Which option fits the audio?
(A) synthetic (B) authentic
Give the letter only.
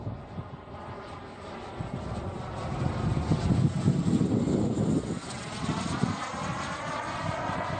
B